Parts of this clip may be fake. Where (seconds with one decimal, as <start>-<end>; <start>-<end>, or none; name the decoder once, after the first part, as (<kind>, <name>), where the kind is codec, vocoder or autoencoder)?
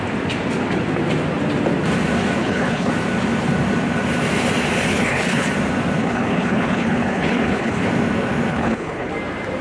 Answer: 2.4-2.9 (codec, HILCodec); 4.9-5.5; 6.0-7.8; 8.5-9.1